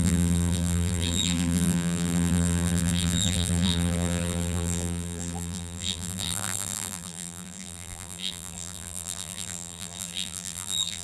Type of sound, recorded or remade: remade